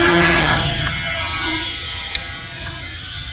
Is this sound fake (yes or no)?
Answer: yes